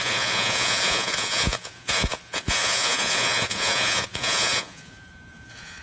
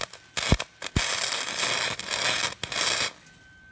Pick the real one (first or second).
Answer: second